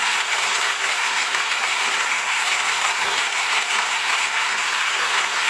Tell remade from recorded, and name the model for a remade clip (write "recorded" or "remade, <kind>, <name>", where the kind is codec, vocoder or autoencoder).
remade, codec, SNAC